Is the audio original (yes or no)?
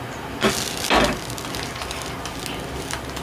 yes